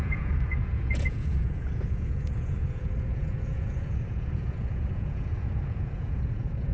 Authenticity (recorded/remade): remade